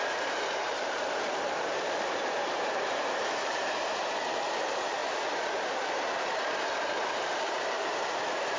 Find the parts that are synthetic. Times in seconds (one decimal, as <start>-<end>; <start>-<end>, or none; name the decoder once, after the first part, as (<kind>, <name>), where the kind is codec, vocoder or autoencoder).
0.0-5.0 (vocoder, BigVGAN v2); 5.7-8.6